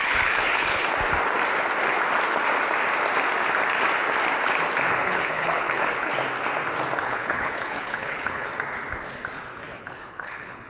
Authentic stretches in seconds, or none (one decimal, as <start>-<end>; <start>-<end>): 0.8-4.9; 6.1-7.0; 8.5-9.8